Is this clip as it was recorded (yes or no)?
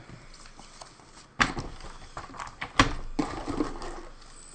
yes